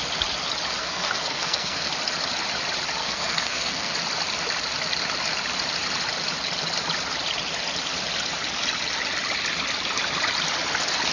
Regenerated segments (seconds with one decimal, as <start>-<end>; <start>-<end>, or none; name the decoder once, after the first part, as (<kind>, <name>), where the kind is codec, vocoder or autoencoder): 0.8-1.9 (codec, SNAC); 3.0-3.9

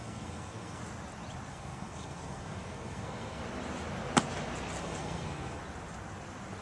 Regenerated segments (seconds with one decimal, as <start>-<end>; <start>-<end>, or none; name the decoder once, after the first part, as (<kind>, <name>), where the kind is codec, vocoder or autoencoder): 0.0-0.8 (codec, SNAC); 1.5-3.4; 4.8-5.6

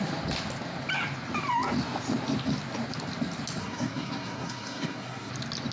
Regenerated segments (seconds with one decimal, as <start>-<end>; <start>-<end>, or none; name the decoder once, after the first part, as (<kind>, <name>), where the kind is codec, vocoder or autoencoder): 3.6-5.3 (codec, SNAC)